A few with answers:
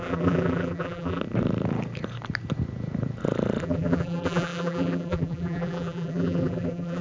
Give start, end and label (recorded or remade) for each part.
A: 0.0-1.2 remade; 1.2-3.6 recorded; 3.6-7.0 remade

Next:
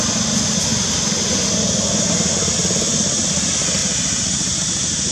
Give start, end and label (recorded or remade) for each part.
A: 0.0-3.8 recorded; 3.8-5.1 remade

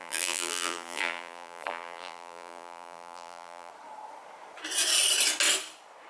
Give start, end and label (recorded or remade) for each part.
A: 0.0-3.7 remade; 3.7-6.1 recorded

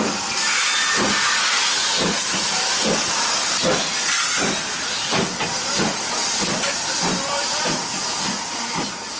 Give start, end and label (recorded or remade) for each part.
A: 0.0-1.8 recorded; 1.8-5.5 remade; 5.5-6.2 recorded; 6.2-8.5 remade; 8.5-9.2 recorded

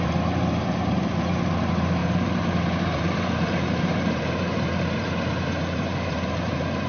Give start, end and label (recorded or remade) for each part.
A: 0.0-6.9 remade

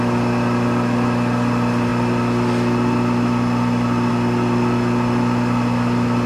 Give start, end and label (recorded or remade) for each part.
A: 0.0-6.3 recorded

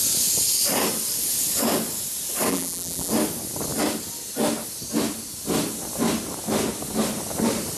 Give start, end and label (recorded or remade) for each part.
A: 0.0-2.5 recorded; 2.5-3.1 remade; 3.1-7.8 recorded

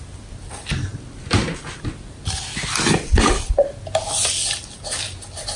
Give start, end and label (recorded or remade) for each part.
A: 0.0-5.6 recorded